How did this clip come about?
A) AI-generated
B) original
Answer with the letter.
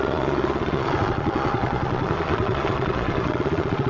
A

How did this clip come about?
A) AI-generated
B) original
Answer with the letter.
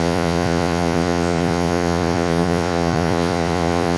A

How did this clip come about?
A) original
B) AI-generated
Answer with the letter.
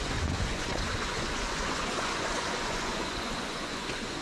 B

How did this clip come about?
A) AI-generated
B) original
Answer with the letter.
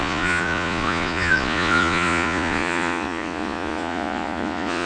A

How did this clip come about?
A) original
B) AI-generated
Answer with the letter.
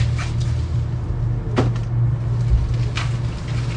A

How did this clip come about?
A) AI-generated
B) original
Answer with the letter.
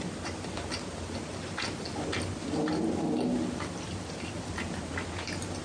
B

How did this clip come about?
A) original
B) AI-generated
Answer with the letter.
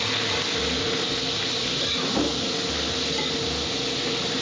A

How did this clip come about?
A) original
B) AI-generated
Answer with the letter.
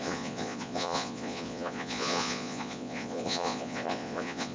B